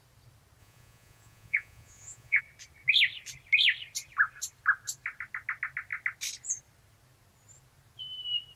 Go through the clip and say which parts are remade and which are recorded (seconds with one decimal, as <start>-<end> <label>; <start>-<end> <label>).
0.0-0.6 recorded; 0.6-2.4 remade; 2.4-8.6 recorded